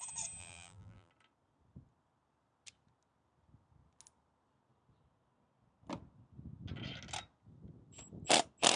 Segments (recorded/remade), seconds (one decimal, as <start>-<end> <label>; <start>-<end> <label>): 0.0-0.4 recorded; 0.4-1.1 remade; 1.1-8.8 recorded